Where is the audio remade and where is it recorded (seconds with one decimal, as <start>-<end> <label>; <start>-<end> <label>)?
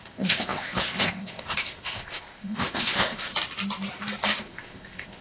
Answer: 0.0-3.3 remade; 3.3-4.4 recorded; 4.4-5.2 remade